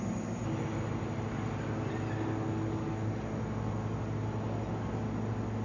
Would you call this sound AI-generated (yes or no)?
no